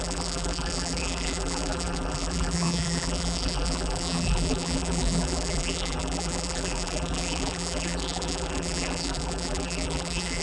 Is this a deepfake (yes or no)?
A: yes